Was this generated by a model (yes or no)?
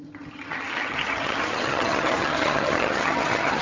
yes